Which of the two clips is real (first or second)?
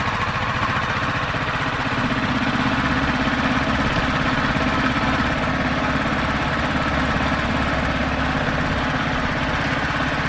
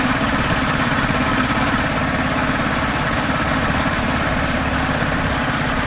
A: first